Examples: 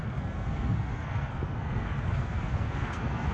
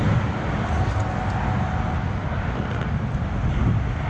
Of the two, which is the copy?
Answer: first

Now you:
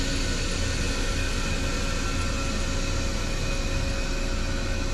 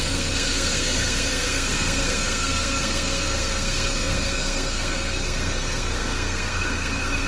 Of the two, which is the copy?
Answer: second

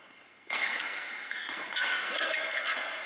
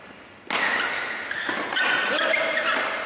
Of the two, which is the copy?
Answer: first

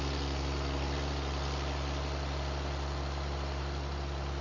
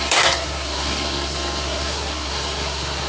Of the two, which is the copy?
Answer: second